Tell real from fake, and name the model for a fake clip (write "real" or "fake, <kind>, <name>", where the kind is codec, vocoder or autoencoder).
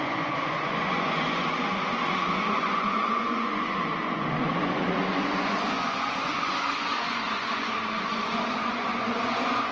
fake, vocoder, Vocos